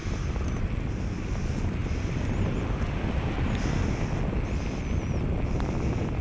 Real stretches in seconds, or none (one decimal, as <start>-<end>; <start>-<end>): 0.0-6.2